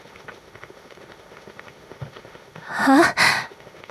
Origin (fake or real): fake